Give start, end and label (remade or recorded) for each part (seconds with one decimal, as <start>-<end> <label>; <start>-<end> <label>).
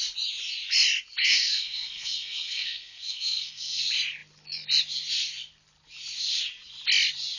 0.0-1.2 recorded; 1.2-3.8 remade; 3.8-7.4 recorded